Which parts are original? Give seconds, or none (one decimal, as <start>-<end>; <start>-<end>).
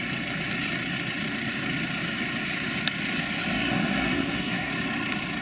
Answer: 0.0-3.7; 4.7-5.4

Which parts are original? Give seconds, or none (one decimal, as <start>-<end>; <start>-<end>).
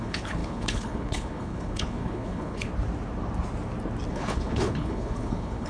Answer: 2.7-4.1